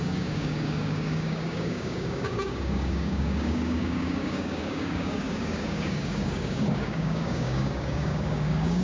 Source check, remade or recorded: remade